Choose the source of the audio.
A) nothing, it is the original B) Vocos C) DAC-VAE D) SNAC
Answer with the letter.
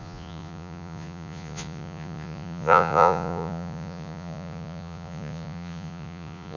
B